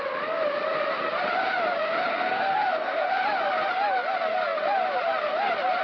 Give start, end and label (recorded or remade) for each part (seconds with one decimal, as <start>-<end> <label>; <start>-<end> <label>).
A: 0.0-2.1 recorded; 2.1-3.1 remade; 3.1-5.8 recorded